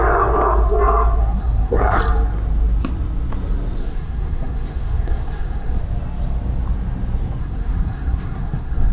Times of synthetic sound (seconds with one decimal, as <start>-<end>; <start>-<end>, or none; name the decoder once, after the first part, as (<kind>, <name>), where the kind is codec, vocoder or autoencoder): 1.2-2.0 (codec, SNAC); 3.8-5.8; 7.4-8.9